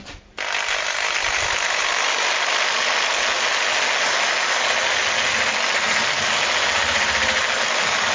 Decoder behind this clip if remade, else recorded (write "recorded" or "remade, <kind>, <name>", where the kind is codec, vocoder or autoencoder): recorded